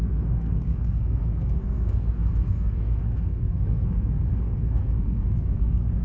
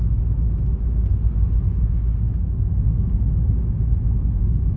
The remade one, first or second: first